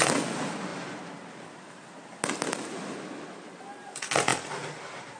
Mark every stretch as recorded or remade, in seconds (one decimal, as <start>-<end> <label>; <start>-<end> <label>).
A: 0.0-5.2 recorded